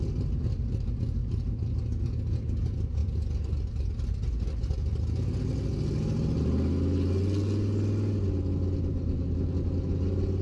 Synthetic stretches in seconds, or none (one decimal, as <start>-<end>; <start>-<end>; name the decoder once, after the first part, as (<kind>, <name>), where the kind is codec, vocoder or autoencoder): none